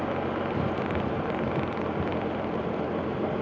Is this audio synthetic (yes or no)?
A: yes